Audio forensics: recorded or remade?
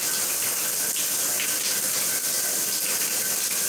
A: recorded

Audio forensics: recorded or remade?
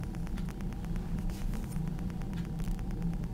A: remade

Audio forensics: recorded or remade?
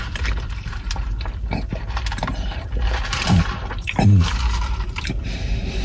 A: remade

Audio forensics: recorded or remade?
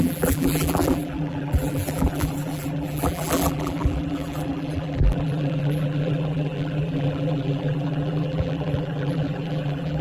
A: remade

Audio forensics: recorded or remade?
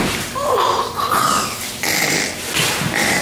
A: remade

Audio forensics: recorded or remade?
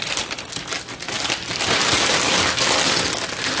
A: recorded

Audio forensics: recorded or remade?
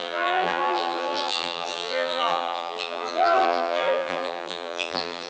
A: remade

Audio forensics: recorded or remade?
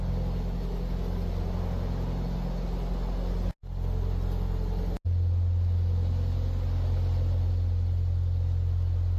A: recorded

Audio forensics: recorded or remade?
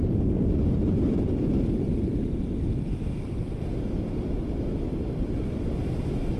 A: recorded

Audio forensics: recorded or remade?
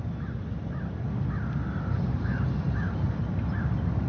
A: recorded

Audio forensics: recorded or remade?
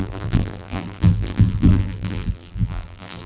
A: remade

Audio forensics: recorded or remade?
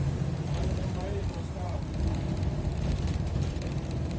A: remade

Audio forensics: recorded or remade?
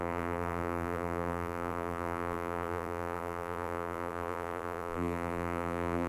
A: remade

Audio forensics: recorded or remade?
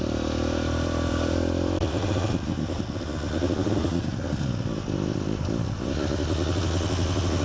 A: remade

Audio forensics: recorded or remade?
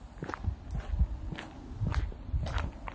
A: recorded